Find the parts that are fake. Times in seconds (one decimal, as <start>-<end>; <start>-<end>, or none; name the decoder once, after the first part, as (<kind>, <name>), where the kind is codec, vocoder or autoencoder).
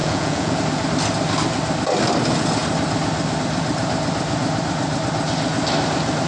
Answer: 0.0-0.6 (vocoder, Vocos)